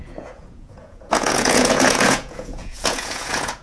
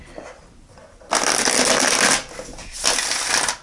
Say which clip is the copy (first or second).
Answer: first